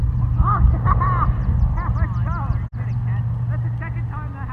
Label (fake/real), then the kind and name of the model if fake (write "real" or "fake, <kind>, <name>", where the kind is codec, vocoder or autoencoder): real